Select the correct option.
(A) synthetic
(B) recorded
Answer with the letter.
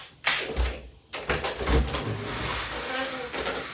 B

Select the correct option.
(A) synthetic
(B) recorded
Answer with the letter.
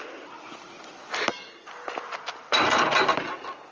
B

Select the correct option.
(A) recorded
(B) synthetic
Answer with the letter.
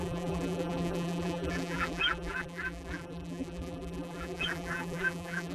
B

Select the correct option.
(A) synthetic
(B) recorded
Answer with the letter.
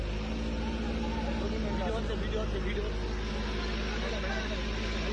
B